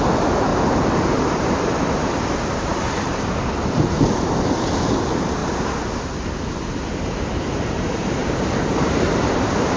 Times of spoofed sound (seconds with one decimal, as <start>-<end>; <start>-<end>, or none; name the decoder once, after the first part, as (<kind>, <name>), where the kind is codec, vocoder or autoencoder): 0.5-4.6 (vocoder, BigVGAN v2); 5.4-9.8

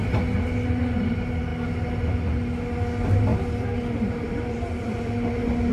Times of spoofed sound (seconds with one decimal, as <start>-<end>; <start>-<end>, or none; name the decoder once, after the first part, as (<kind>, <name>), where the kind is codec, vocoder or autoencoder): 3.3-5.7 (vocoder, BigVGAN v2)

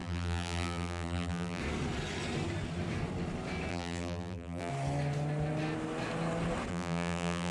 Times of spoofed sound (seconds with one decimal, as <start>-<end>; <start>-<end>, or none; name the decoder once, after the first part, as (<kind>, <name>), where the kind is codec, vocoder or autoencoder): 0.0-1.6 (vocoder, BigVGAN v2); 3.7-4.7; 6.7-7.5